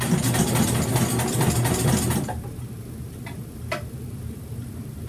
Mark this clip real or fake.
real